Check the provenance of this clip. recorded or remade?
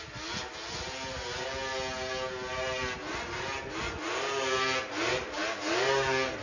recorded